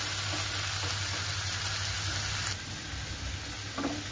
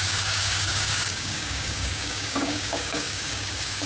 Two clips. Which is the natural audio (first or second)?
first